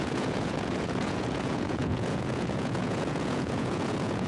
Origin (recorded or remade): remade